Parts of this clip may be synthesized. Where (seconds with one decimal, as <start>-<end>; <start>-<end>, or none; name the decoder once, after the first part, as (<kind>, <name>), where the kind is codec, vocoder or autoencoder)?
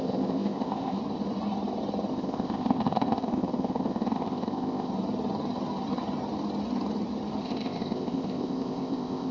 0.0-1.0 (codec, ZipCodec); 2.1-4.9; 7.4-9.3